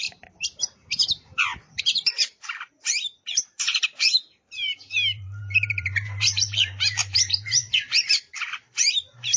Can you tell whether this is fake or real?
fake